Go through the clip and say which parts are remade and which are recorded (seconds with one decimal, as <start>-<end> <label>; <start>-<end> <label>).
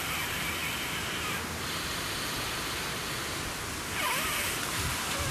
0.0-5.3 recorded